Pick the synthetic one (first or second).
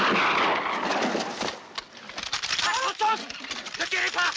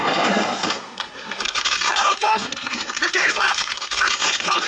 second